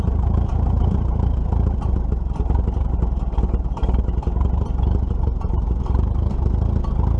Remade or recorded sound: recorded